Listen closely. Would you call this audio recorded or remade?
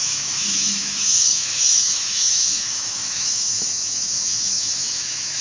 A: remade